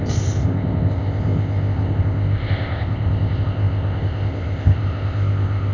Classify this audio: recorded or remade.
remade